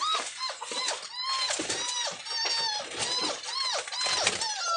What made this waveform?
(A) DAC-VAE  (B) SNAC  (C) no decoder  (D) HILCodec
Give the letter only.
C